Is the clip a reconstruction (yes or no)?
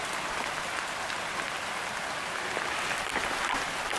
no